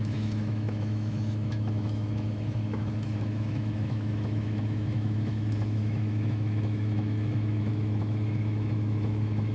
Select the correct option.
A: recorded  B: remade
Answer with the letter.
B